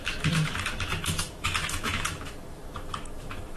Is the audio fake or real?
fake